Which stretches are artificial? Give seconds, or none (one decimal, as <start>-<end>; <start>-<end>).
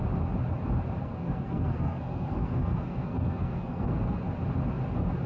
1.0-4.2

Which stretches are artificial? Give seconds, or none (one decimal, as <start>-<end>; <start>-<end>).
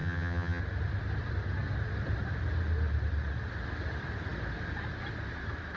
0.0-0.6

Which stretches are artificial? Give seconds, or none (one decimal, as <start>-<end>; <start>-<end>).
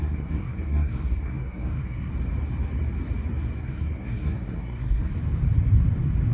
0.0-2.1; 3.6-5.1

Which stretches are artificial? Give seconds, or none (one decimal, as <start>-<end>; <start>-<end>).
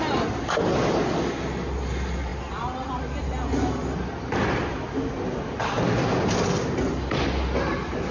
none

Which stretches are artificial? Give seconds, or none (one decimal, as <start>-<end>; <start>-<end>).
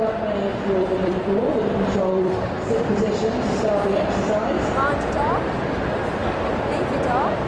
0.5-4.3; 6.2-6.8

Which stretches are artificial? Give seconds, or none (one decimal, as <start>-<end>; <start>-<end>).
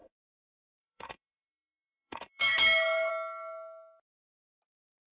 0.0-3.1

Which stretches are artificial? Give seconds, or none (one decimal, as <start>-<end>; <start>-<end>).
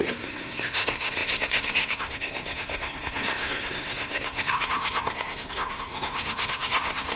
0.0-7.2